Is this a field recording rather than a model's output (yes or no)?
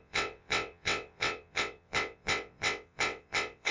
no